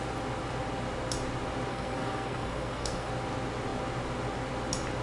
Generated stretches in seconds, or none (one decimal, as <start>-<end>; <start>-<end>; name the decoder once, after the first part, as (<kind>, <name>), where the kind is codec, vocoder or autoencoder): 1.7-3.1 (codec, SNAC)